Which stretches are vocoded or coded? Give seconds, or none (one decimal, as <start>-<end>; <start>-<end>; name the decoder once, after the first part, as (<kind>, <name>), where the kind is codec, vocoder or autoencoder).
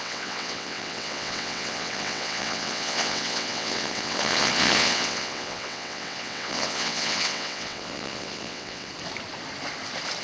0.0-8.9 (vocoder, WaveNeXt)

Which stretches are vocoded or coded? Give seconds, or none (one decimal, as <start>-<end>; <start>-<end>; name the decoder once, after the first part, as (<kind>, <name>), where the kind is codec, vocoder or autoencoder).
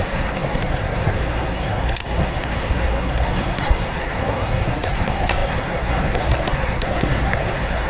0.0-7.9 (codec, SNAC)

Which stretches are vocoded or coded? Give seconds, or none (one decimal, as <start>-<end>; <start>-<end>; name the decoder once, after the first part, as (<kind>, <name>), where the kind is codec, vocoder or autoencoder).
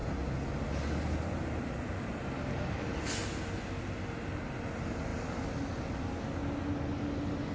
none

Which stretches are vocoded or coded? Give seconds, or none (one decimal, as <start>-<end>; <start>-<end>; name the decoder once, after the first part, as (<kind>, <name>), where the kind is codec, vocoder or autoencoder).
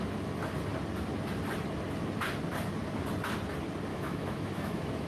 3.9-5.1 (autoencoder, DAC-VAE)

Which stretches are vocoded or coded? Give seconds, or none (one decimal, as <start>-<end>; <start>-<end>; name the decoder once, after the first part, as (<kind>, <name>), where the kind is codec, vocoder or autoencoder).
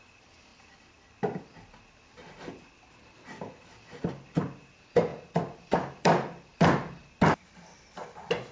none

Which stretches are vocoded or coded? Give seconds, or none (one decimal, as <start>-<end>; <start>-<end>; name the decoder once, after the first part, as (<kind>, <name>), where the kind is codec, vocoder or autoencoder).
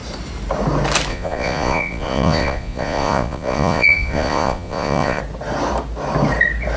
1.1-5.2 (vocoder, Vocos)